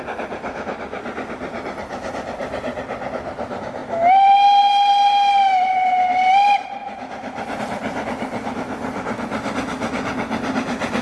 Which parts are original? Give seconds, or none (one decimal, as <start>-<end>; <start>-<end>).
0.0-11.0

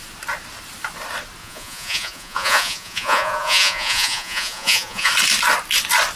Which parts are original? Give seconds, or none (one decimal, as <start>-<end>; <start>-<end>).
0.0-1.4; 5.1-6.2